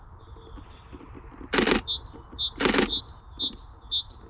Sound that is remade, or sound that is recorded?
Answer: recorded